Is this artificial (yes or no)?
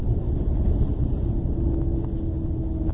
no